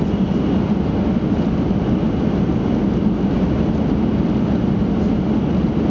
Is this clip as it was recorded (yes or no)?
yes